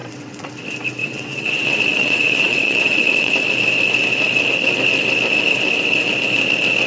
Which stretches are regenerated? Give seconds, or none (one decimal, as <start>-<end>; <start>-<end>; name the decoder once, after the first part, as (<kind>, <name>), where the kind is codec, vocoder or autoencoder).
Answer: 0.0-0.5 (vocoder, WaveNeXt); 1.0-3.3